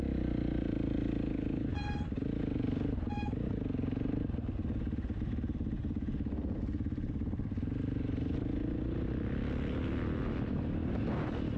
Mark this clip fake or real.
real